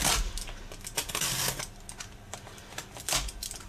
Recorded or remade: recorded